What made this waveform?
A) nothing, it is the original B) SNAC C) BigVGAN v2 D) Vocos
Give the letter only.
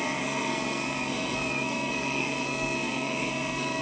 B